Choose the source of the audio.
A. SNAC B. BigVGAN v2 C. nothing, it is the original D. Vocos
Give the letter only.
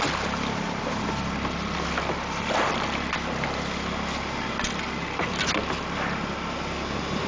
C